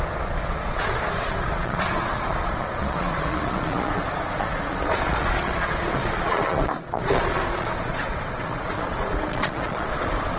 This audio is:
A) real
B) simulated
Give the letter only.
B